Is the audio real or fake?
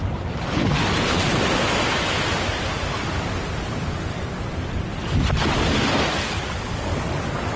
real